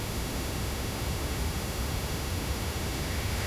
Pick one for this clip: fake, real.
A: fake